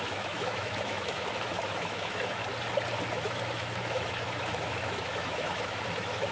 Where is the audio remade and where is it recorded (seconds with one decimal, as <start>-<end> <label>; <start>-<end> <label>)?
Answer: 0.0-2.4 remade; 2.4-3.1 recorded; 3.1-6.3 remade